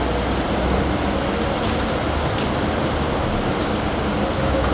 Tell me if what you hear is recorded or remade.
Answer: recorded